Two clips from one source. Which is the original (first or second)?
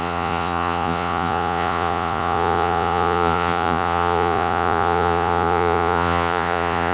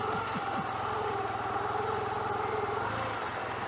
second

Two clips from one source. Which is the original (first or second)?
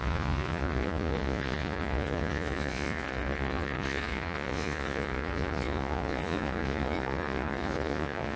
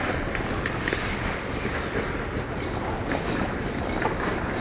second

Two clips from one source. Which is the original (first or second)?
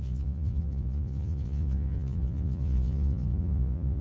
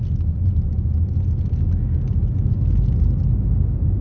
second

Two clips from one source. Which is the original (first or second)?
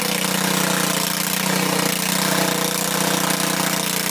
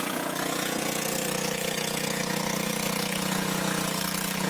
first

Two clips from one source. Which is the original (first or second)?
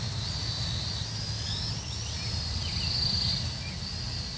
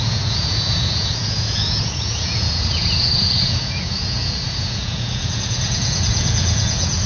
first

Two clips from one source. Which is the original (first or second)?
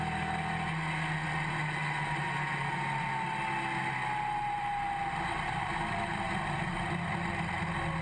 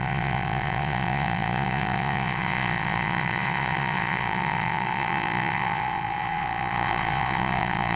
first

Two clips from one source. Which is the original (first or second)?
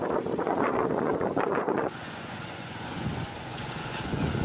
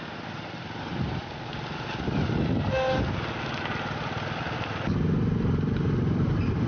second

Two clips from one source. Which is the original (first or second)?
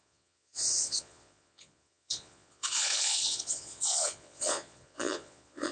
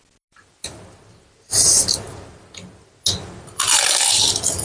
second